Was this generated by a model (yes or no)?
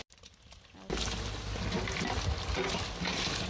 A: no